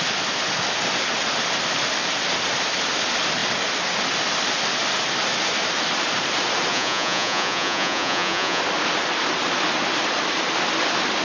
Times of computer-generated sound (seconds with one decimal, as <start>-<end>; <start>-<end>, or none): 6.7-8.6